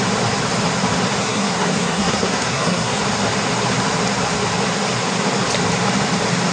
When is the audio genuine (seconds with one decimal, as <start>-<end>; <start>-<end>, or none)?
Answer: 0.0-1.2; 3.0-6.5